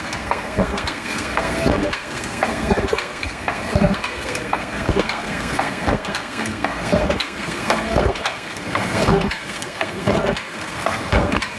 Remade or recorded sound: remade